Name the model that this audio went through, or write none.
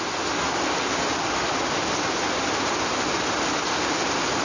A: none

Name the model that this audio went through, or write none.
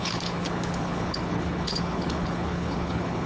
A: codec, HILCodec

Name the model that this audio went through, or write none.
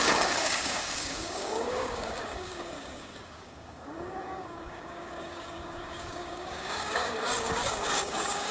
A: codec, DAC